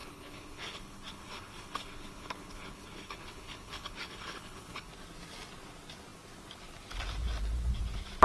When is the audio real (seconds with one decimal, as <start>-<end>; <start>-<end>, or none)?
4.9-8.2